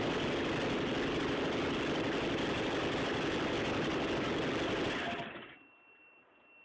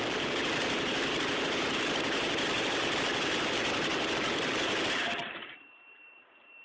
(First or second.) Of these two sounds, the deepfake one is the second